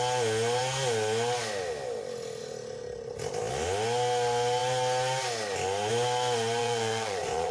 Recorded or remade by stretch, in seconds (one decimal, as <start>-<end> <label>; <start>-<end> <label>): 0.0-6.6 recorded; 6.6-7.5 remade